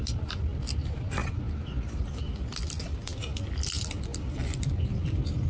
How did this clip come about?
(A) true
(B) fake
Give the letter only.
A